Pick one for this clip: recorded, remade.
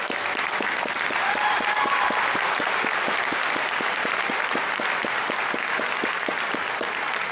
recorded